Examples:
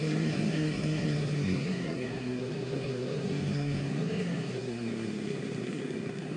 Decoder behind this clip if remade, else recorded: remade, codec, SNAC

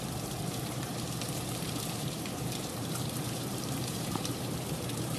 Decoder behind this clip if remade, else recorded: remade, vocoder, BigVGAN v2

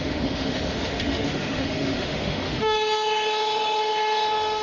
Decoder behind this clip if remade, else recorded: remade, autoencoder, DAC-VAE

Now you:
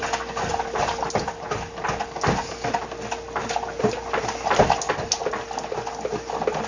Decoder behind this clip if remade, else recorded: recorded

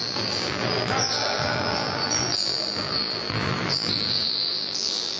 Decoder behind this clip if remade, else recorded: remade, vocoder, BigVGAN v2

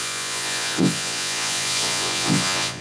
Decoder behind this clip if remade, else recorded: remade, vocoder, Vocos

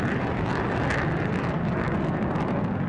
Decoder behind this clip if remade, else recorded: recorded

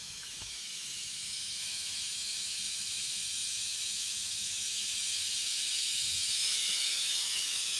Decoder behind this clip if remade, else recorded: remade, autoencoder, DAC-VAE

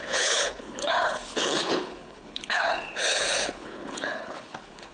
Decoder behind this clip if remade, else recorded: remade, codec, HILCodec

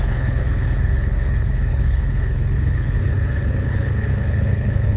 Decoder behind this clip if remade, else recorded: remade, codec, HILCodec